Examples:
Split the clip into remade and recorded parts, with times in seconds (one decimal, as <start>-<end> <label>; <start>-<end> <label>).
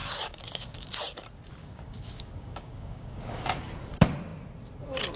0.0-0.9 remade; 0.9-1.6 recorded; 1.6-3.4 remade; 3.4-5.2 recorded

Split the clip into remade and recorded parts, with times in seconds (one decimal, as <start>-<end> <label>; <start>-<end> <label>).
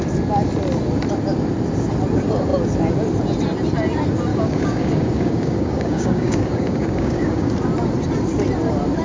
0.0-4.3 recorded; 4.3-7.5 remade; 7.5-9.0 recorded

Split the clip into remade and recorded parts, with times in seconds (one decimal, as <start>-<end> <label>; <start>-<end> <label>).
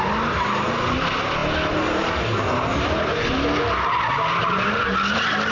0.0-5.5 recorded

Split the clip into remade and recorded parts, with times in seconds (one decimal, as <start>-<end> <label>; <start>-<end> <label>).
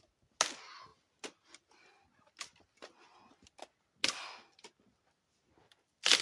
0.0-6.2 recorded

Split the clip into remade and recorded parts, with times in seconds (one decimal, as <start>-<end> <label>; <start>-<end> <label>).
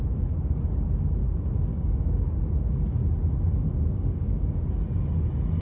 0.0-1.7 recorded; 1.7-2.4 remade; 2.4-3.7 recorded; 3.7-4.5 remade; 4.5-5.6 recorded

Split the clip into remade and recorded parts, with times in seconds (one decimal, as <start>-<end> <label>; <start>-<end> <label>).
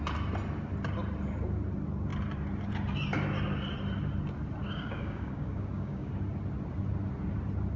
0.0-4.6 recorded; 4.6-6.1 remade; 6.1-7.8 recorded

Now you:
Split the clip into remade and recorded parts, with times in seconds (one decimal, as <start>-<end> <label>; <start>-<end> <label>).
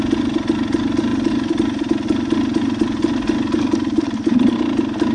0.0-5.1 recorded